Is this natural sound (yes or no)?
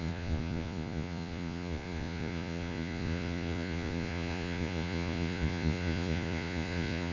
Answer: no